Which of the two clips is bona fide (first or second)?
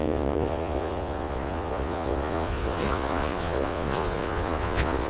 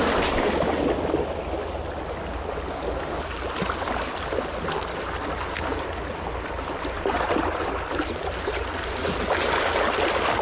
second